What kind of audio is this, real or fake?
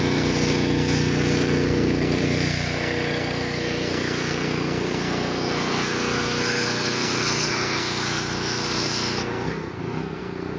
fake